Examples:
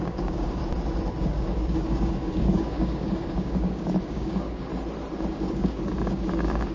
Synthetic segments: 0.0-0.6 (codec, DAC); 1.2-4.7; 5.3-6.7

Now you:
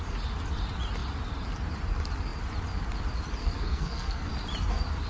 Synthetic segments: 3.4-4.3 (codec, SNAC)

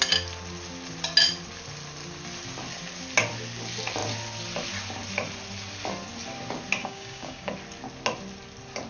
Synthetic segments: 6.8-7.5 (codec, DAC)

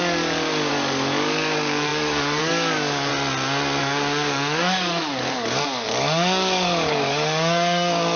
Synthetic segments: 0.0-3.1 (codec, DAC); 3.8-8.2

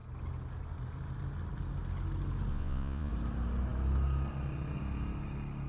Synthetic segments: 2.5-3.1 (vocoder, Vocos)

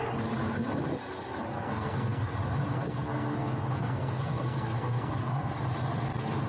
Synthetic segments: 1.5-2.3 (codec, SNAC); 2.7-5.5

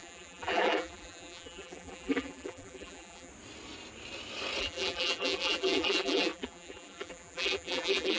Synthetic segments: 0.0-3.3 (vocoder, BigVGAN v2); 4.6-8.2